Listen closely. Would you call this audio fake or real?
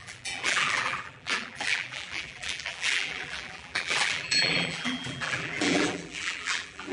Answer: fake